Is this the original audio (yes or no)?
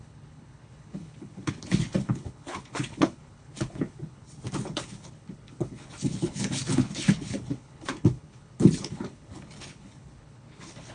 no